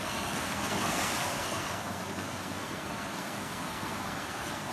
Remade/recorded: remade